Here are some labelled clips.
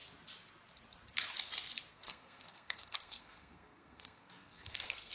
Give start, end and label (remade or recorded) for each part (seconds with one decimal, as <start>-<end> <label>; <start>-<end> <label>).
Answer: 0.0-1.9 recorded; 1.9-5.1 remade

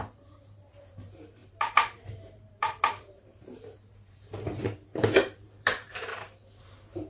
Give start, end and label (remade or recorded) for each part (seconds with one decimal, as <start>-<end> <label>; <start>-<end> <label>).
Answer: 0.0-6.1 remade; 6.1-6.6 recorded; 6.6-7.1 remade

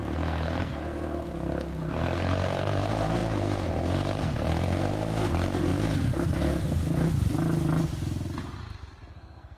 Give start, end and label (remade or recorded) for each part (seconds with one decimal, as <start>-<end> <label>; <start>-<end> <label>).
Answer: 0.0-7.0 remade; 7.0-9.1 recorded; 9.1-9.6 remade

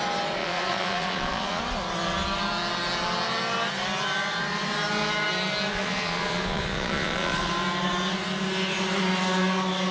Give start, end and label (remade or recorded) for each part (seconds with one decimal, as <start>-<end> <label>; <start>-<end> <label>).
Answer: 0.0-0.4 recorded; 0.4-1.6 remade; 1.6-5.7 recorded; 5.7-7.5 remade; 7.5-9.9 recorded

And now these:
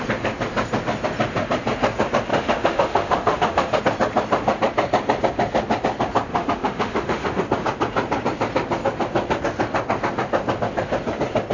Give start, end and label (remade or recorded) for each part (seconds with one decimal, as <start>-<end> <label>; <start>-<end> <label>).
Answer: 0.0-2.3 recorded; 2.3-3.8 remade; 3.8-6.3 recorded; 6.3-7.4 remade; 7.4-11.5 recorded

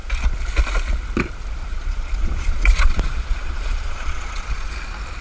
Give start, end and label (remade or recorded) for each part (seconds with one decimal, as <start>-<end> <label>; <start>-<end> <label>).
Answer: 0.0-1.6 recorded; 1.6-4.7 remade; 4.7-5.2 recorded

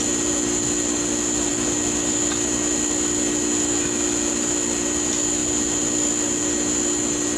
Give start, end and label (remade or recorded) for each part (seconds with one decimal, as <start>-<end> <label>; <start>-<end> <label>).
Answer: 0.0-7.4 recorded

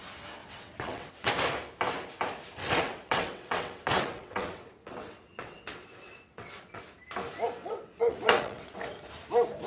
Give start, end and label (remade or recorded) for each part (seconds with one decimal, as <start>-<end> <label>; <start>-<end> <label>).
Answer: 0.0-0.4 recorded; 0.4-1.3 remade; 1.3-2.6 recorded; 2.6-6.8 remade; 6.8-7.6 recorded; 7.6-8.8 remade; 8.8-9.7 recorded